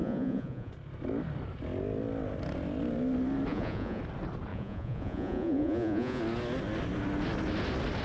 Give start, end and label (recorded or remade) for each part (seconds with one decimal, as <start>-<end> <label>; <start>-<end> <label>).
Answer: 0.0-0.7 remade; 0.7-3.5 recorded; 3.5-4.0 remade; 4.0-4.5 recorded; 4.5-6.2 remade; 6.2-8.0 recorded